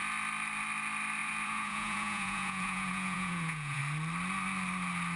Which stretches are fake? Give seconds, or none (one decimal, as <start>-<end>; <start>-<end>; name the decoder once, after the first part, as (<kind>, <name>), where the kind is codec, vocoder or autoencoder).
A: 1.2-3.8 (vocoder, Vocos)